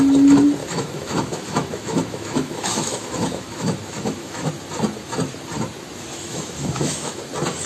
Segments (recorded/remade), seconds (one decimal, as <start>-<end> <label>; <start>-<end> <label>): 0.0-0.6 recorded; 0.6-4.5 remade; 4.5-6.1 recorded; 6.1-7.2 remade; 7.2-7.7 recorded